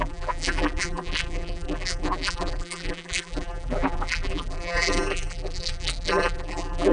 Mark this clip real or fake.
fake